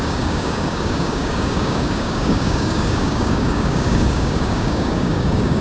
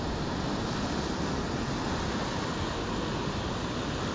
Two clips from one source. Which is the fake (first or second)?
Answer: first